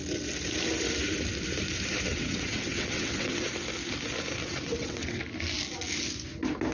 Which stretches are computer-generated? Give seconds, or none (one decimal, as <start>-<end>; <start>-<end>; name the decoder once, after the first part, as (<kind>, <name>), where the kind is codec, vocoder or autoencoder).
2.1-3.5 (vocoder, WaveNeXt); 4.4-5.2